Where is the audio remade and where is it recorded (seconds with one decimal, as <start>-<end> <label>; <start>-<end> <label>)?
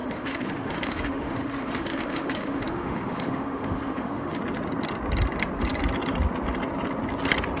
0.0-4.4 remade; 4.4-7.6 recorded